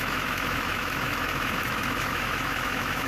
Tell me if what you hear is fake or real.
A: fake